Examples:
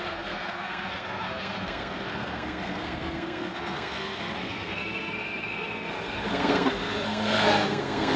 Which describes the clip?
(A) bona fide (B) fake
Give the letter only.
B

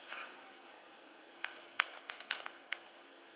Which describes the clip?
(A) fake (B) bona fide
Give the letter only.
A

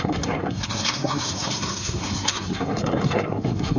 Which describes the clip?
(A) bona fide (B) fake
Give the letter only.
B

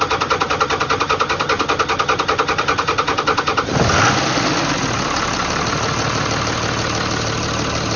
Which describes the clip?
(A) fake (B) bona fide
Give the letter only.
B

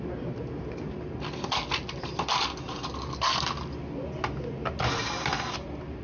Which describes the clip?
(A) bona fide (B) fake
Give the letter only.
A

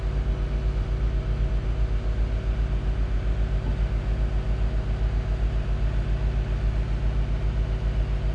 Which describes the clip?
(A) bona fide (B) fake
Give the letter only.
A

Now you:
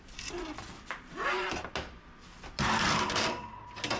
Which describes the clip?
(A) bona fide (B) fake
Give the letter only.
A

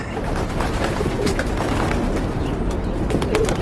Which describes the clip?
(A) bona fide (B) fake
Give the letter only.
A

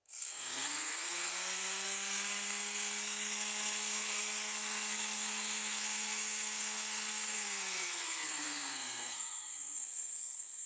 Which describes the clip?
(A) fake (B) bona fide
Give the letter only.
A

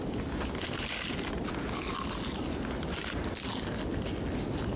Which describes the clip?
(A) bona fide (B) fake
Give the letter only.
A